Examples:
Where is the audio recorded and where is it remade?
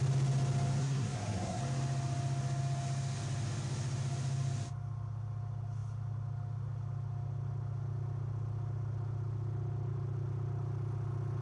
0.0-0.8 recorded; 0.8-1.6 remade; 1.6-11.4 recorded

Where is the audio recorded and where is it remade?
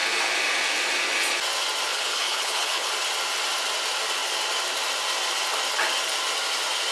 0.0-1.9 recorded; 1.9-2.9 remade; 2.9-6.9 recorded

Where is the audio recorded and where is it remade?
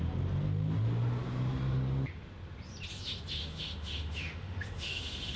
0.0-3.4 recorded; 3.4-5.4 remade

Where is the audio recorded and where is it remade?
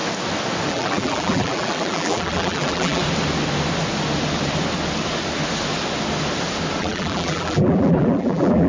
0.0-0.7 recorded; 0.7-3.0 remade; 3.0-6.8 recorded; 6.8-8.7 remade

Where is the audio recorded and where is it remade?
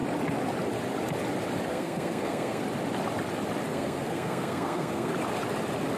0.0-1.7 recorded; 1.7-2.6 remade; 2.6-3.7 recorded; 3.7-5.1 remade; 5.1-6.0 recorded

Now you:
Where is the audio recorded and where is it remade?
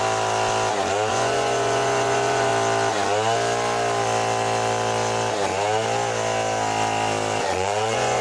0.0-1.1 recorded; 1.1-2.5 remade; 2.5-7.4 recorded; 7.4-8.2 remade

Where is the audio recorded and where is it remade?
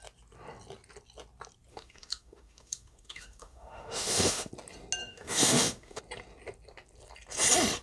0.0-1.7 recorded; 1.7-4.5 remade; 4.5-5.0 recorded; 5.0-6.0 remade; 6.0-7.8 recorded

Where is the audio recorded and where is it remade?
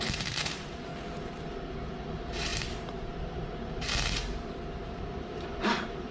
0.0-0.9 remade; 0.9-1.7 recorded; 1.7-6.1 remade